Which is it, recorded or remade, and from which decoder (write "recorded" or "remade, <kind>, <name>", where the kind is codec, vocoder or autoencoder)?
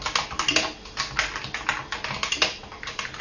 recorded